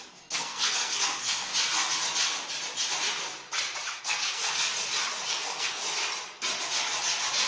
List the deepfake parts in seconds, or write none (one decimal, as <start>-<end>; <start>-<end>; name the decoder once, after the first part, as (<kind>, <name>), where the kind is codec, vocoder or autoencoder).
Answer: 0.0-1.5 (codec, SNAC); 4.0-4.7; 5.3-5.8